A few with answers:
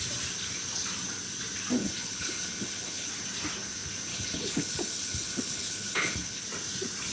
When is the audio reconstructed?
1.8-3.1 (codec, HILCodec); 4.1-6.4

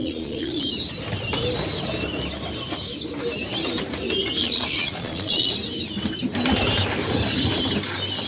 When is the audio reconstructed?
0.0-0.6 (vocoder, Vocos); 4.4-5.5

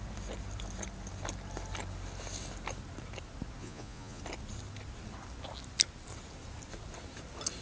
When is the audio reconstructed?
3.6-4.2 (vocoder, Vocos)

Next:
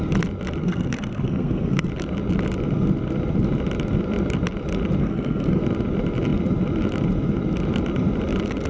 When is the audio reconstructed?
0.6-1.9 (codec, SNAC); 5.0-5.6

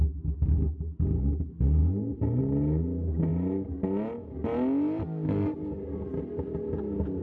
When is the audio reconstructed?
none